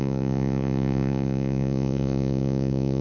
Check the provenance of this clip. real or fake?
fake